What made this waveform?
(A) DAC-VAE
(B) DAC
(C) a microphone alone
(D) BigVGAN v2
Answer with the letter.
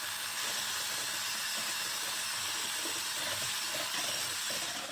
C